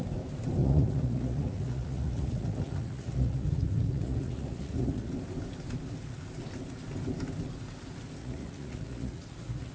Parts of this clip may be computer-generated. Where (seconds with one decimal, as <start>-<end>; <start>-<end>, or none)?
0.6-5.1; 8.2-9.7